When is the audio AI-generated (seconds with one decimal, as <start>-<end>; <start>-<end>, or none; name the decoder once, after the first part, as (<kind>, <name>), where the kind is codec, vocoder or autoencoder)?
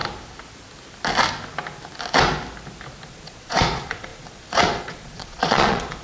3.1-6.0 (vocoder, Vocos)